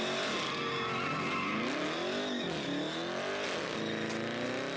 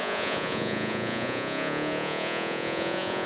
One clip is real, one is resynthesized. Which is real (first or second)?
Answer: first